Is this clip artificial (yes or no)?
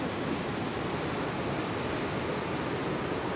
no